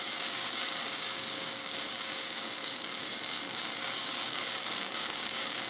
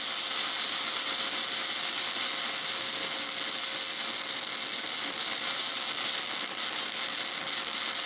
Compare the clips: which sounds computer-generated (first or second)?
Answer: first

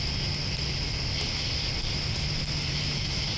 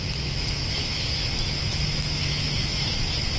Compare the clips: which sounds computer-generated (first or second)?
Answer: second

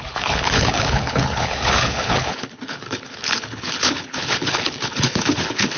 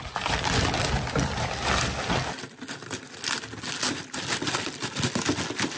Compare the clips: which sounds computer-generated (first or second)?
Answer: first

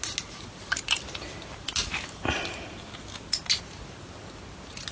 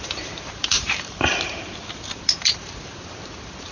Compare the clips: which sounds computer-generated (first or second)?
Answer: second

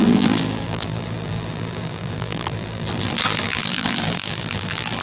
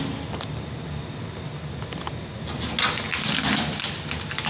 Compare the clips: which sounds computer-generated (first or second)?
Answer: first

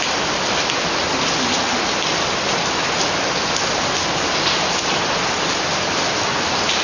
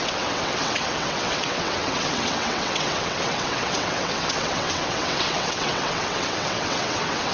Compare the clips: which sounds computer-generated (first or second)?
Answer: second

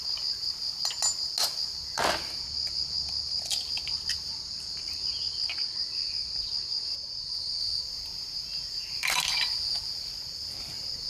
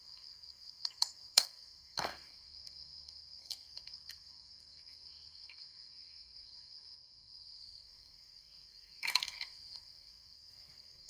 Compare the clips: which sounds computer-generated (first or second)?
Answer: second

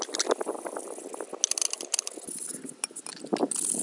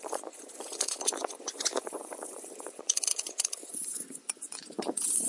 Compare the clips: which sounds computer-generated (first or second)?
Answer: second